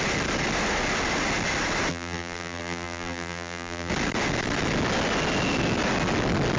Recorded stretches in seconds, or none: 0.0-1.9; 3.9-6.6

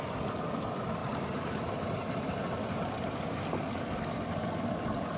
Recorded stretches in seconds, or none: 0.0-1.0; 3.5-5.2